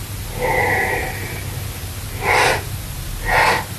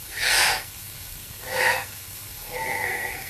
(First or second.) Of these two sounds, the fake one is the second